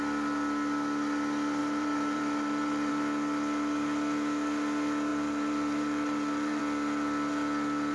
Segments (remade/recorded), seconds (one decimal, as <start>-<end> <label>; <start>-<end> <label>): 0.0-1.6 recorded; 1.6-2.9 remade; 2.9-5.1 recorded; 5.1-6.6 remade; 6.6-7.9 recorded